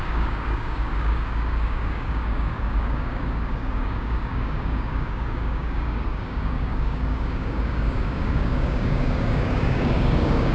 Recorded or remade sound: remade